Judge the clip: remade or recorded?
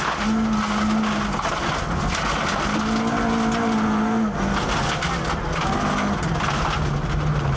recorded